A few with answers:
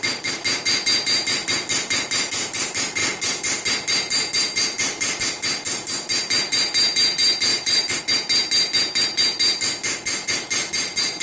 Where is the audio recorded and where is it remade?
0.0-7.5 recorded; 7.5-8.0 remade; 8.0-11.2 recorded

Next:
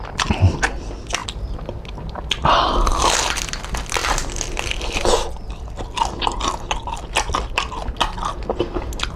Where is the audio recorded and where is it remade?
0.0-2.9 recorded; 2.9-3.6 remade; 3.6-4.0 recorded; 4.0-7.7 remade; 7.7-9.2 recorded

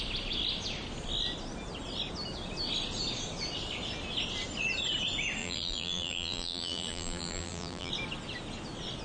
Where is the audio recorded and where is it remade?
0.0-5.4 recorded; 5.4-7.9 remade; 7.9-9.0 recorded

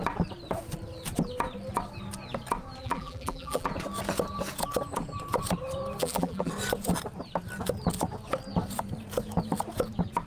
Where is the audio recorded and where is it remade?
0.0-2.8 recorded; 2.8-3.7 remade; 3.7-6.0 recorded; 6.0-6.5 remade; 6.5-10.3 recorded

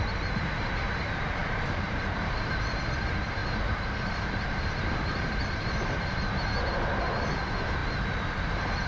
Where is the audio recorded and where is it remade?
0.0-1.4 recorded; 1.4-2.7 remade; 2.7-3.4 recorded; 3.4-6.2 remade; 6.2-7.8 recorded; 7.8-8.9 remade

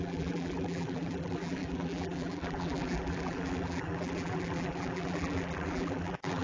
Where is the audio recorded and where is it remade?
0.0-6.4 remade

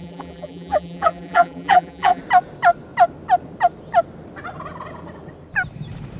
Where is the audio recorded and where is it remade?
0.0-2.2 remade; 2.2-6.2 recorded